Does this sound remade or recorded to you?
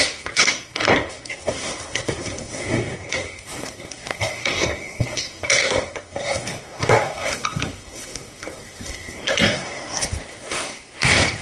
remade